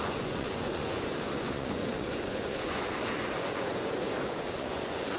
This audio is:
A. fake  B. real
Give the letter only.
A